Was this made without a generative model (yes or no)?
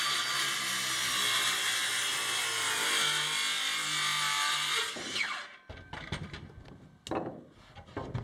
yes